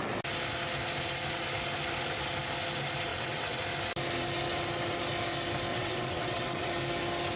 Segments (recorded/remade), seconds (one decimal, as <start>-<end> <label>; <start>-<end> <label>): 0.0-3.1 recorded; 3.1-3.6 remade; 3.6-5.7 recorded; 5.7-6.7 remade; 6.7-7.4 recorded